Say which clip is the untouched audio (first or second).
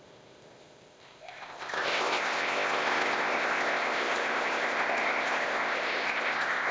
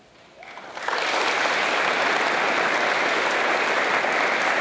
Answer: second